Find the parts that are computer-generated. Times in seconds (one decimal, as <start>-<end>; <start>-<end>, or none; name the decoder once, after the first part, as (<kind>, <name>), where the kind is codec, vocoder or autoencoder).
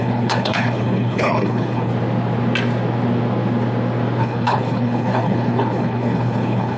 0.0-1.9 (codec, HILCodec); 4.2-6.8